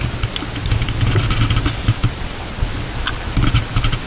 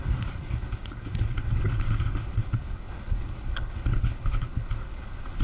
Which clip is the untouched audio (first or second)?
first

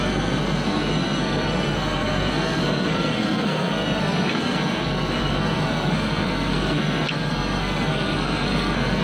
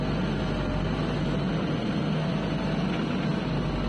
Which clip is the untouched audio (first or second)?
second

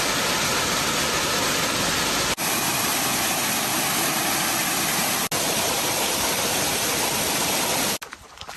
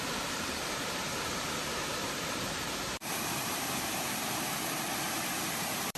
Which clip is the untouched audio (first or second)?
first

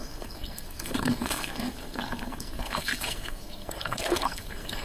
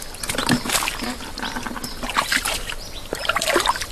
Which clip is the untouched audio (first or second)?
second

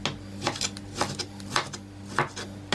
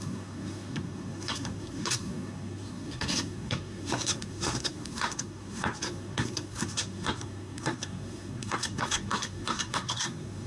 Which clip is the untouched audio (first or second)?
first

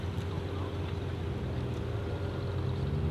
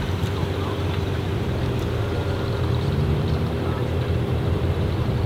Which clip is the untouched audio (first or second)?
first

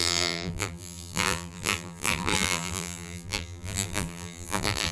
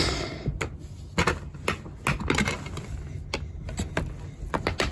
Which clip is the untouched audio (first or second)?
second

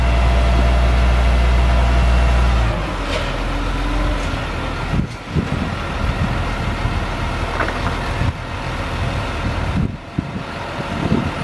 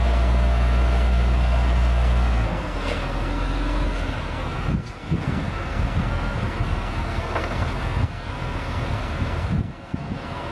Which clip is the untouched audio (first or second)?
first